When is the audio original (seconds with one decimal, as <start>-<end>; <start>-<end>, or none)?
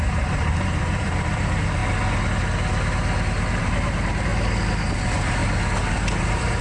1.8-3.6; 4.3-4.9; 5.4-5.9